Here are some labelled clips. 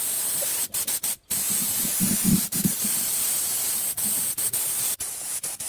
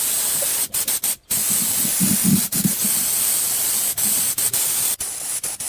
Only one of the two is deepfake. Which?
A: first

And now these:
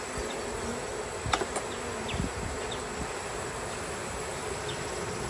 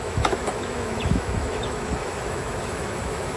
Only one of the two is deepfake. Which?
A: second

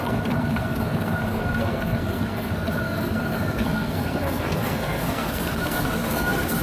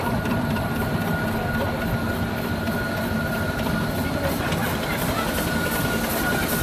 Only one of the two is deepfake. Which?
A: first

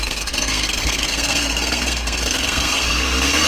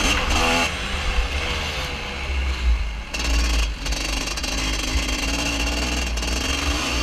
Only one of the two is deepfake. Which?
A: first